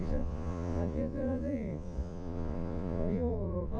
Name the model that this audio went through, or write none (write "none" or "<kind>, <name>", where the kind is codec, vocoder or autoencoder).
vocoder, Vocos